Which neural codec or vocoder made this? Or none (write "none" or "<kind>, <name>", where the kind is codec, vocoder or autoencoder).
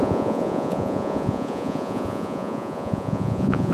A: vocoder, Vocos